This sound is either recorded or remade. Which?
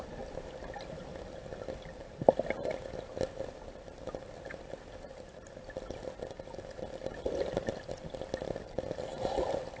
recorded